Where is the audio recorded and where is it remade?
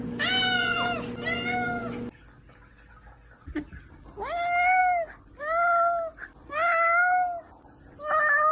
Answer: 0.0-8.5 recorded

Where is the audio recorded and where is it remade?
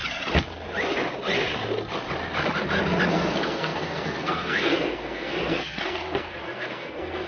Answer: 0.0-3.1 recorded; 3.1-7.3 remade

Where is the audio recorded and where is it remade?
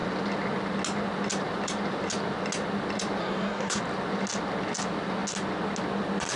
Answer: 0.0-3.2 recorded; 3.2-3.8 remade; 3.8-6.4 recorded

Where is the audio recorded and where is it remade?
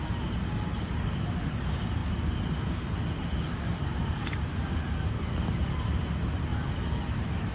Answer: 0.0-3.9 recorded; 3.9-5.7 remade; 5.7-6.5 recorded; 6.5-7.5 remade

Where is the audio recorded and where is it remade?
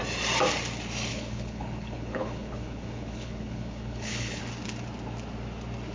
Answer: 0.0-1.1 recorded; 1.1-4.4 remade; 4.4-5.9 recorded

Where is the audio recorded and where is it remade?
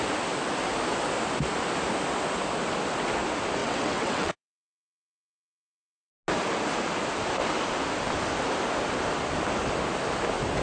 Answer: 0.0-3.6 recorded; 3.6-6.1 remade; 6.1-10.6 recorded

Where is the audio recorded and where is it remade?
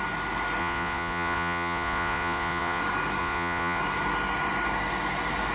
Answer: 0.0-0.6 recorded; 0.6-2.8 remade; 2.8-3.2 recorded; 3.2-3.8 remade; 3.8-5.5 recorded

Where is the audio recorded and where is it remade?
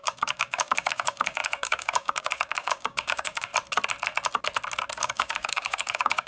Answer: 0.0-3.5 remade; 3.5-5.0 recorded; 5.0-6.3 remade